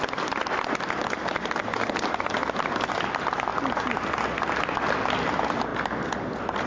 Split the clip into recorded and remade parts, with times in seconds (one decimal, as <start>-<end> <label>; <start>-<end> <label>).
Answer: 0.0-6.7 recorded